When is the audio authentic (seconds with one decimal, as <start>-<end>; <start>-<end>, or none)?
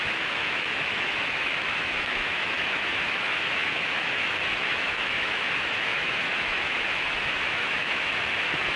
none